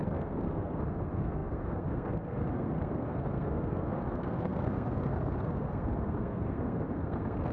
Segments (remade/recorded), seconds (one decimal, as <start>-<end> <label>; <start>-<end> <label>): 0.0-7.5 remade